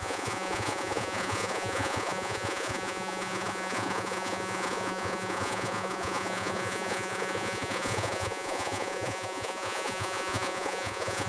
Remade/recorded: remade